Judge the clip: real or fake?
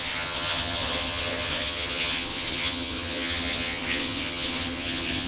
fake